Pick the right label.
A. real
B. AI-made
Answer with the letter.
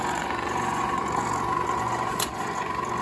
B